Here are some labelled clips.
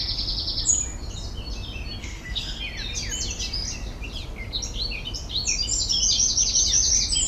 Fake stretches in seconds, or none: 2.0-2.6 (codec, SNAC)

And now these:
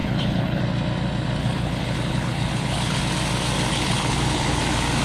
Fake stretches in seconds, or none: 0.0-0.6 (codec, HILCodec); 1.4-3.0; 3.7-4.6